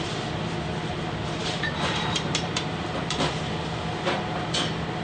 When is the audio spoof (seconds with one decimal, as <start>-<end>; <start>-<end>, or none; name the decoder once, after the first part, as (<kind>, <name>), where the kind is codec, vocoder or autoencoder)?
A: 0.8-3.3 (vocoder, BigVGAN v2)